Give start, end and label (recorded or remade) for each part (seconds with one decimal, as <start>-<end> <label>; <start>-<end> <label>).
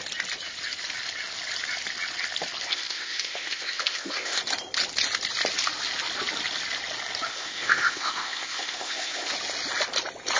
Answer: 0.0-2.7 recorded; 2.7-4.4 remade; 4.4-7.3 recorded; 7.3-9.3 remade; 9.3-10.4 recorded